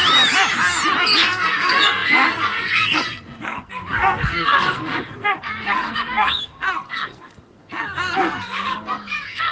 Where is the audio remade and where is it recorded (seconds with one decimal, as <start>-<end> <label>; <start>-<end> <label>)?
0.0-1.0 recorded; 1.0-9.5 remade